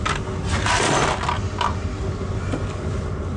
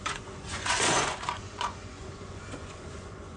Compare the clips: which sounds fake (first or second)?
second